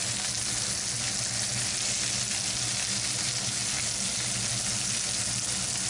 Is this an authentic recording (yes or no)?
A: yes